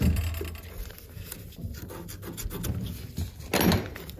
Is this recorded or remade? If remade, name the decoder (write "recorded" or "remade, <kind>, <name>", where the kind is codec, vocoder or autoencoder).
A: recorded